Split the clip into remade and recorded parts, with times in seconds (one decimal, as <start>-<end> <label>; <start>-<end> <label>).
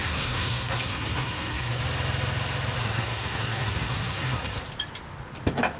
0.0-1.8 remade; 1.8-2.8 recorded; 2.8-4.6 remade; 4.6-5.8 recorded